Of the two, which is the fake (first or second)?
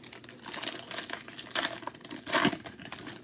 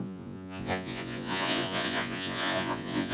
second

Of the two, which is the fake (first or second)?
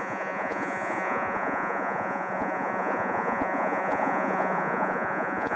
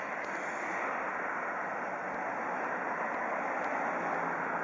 first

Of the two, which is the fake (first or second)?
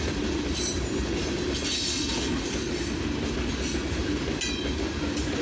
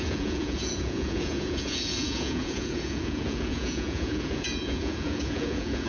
second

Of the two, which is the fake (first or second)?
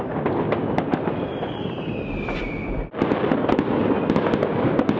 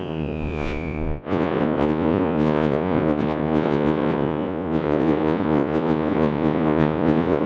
second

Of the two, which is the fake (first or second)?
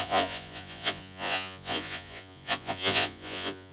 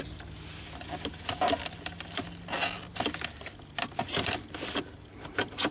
first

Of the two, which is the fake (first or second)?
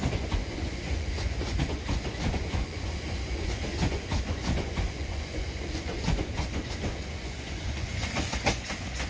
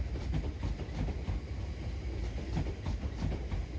first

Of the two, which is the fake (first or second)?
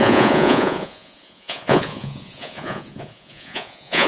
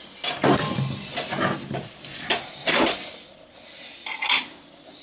first